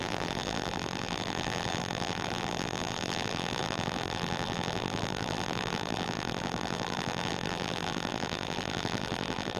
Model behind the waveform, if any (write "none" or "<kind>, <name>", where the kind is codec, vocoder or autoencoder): vocoder, BigVGAN v2